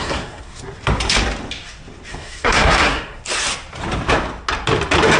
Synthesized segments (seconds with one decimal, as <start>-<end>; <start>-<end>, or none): 0.0-0.6; 2.1-3.2